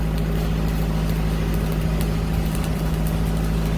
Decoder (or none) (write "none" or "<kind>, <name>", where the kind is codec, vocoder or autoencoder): none